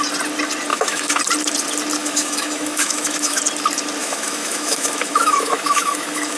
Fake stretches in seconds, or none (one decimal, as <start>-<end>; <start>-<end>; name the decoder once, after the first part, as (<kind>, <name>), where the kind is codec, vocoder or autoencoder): 0.7-1.2 (autoencoder, DAC-VAE); 2.0-3.4; 4.0-6.4